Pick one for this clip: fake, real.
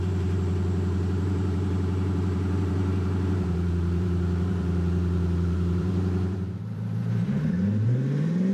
fake